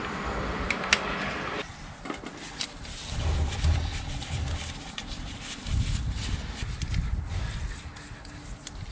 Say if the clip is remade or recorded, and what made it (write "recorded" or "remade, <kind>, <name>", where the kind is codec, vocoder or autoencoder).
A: recorded